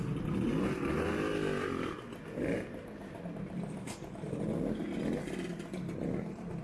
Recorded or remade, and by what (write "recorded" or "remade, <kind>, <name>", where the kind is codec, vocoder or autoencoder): recorded